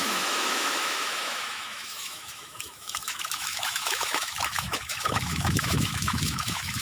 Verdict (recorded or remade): remade